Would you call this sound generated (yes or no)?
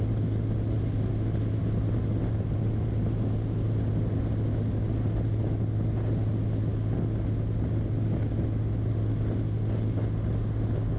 no